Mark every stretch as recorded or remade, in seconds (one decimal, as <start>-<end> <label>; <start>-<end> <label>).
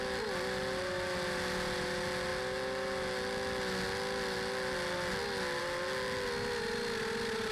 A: 0.0-7.5 recorded